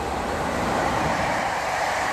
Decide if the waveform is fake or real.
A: fake